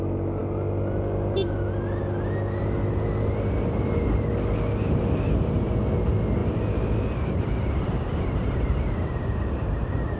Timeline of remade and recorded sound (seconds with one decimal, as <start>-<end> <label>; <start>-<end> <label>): 0.0-10.2 recorded